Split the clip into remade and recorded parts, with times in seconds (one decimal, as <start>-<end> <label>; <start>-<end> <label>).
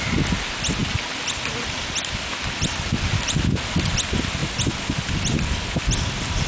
0.0-6.5 recorded